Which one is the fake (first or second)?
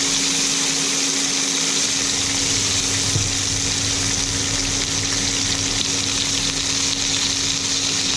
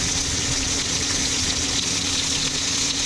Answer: second